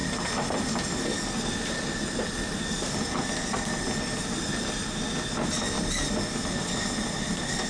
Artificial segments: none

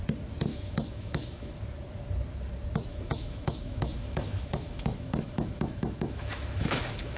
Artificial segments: 0.5-1.5 (autoencoder, DAC-VAE); 2.9-7.2

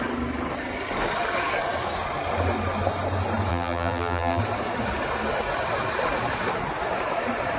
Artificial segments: 3.5-4.4 (vocoder, BigVGAN v2)

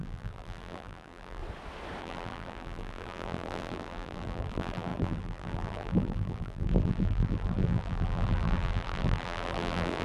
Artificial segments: 0.0-1.4 (vocoder, BigVGAN v2); 2.0-10.0

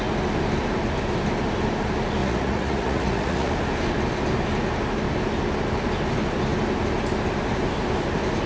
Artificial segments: 2.2-3.5 (vocoder, Vocos)